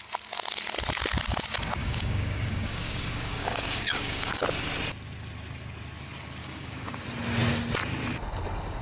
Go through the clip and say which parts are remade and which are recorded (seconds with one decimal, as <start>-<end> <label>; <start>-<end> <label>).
0.0-1.8 recorded; 1.8-4.4 remade; 4.4-6.4 recorded; 6.4-7.0 remade; 7.0-8.8 recorded